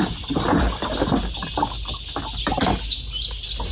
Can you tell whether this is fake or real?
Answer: real